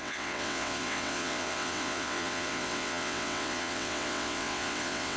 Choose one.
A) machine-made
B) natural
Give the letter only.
A